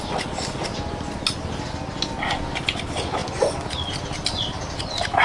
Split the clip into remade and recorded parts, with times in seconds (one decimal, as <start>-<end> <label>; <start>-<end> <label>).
0.0-0.7 remade; 0.7-2.5 recorded; 2.5-5.2 remade